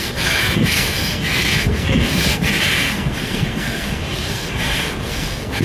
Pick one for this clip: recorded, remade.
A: remade